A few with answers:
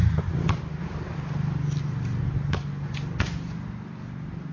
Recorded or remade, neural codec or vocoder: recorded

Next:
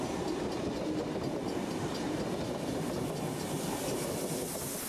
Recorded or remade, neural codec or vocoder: recorded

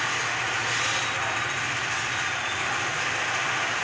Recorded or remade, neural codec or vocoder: recorded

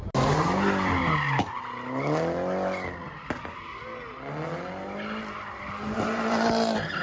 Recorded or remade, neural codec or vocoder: recorded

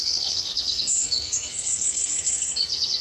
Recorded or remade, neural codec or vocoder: remade, codec, SNAC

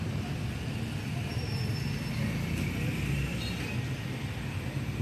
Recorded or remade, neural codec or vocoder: recorded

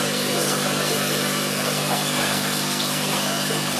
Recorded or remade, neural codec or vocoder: remade, codec, SNAC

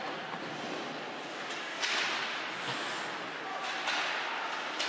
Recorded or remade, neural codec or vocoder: recorded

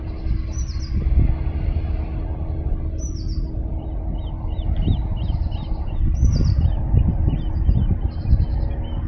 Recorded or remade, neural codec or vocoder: recorded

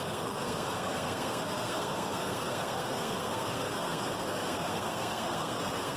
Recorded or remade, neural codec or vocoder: remade, codec, SNAC